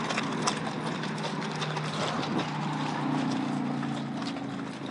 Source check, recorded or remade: recorded